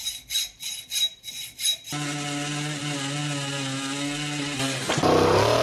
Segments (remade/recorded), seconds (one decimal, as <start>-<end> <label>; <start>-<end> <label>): 0.0-5.6 recorded